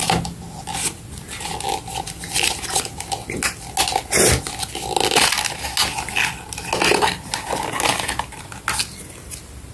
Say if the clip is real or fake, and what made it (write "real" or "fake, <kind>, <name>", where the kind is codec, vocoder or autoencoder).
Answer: real